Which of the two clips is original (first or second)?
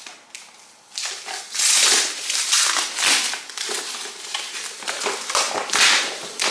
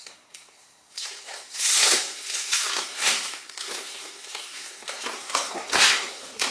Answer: first